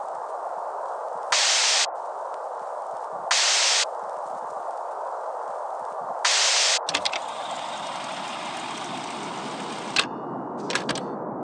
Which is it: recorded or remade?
recorded